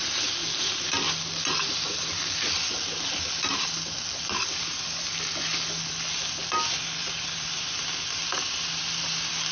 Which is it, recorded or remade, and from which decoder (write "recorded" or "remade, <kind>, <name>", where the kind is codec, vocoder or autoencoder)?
recorded